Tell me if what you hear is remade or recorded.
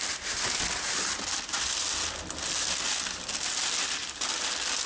recorded